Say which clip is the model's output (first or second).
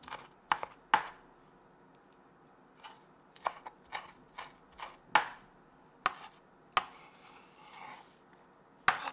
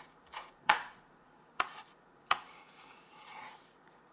second